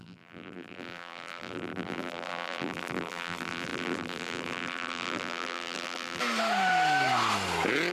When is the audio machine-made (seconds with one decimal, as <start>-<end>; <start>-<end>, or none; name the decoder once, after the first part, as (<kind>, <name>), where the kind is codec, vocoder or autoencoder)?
0.0-6.2 (vocoder, BigVGAN v2)